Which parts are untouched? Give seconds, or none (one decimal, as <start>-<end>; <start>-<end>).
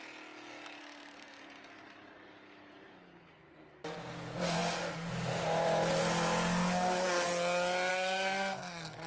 0.0-0.8; 1.4-7.9